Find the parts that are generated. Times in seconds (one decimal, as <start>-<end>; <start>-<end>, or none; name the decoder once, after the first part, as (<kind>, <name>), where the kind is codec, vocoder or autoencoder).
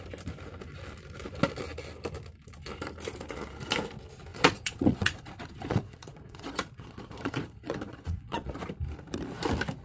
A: 4.3-8.6 (vocoder, Vocos)